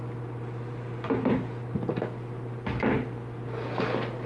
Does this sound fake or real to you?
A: real